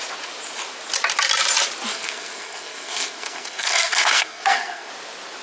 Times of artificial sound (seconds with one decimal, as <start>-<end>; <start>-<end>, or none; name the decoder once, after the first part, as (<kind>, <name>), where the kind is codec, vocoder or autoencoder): 1.9-4.9 (codec, SNAC)